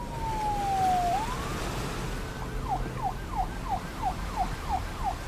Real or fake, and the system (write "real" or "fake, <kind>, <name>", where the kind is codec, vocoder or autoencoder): real